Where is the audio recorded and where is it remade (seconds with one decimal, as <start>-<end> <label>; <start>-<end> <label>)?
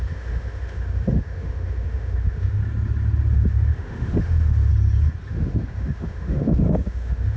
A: 0.0-2.6 remade; 2.6-3.3 recorded; 3.3-4.7 remade; 4.7-5.3 recorded; 5.3-7.4 remade